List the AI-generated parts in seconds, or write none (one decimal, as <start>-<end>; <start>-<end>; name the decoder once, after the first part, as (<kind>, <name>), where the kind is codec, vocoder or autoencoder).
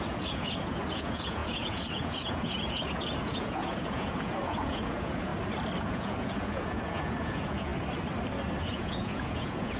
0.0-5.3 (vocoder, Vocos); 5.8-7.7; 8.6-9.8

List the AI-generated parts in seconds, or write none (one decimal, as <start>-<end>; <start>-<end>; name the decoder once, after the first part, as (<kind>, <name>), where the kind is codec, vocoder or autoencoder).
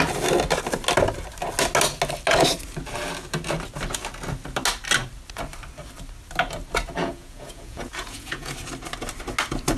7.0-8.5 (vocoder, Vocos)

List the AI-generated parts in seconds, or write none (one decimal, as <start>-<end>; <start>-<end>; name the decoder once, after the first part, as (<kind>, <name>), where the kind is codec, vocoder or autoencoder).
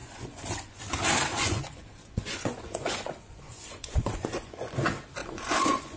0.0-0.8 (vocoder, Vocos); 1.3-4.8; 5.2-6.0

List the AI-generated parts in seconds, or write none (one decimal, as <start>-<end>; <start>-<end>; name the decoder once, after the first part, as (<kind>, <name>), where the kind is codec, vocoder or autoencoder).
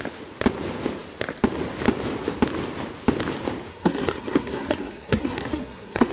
3.7-6.1 (codec, SNAC)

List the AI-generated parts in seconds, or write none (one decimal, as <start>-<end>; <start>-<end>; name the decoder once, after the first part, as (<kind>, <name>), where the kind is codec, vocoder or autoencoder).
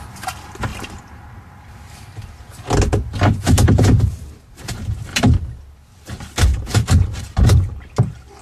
5.1-6.0 (vocoder, BigVGAN v2); 6.5-7.2